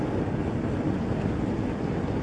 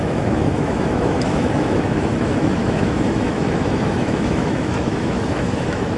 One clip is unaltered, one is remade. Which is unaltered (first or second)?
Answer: first